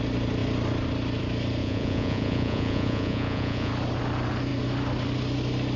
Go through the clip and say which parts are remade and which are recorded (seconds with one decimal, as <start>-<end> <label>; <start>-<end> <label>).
0.0-1.6 recorded; 1.6-3.7 remade; 3.7-5.8 recorded